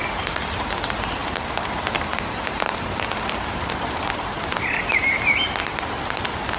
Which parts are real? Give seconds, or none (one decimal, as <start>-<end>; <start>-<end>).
0.0-1.2; 5.0-6.6